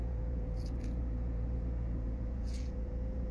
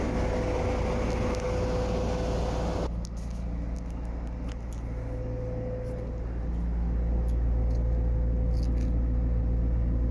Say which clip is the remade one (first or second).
first